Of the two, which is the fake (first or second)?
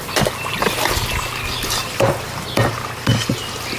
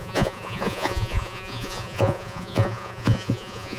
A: second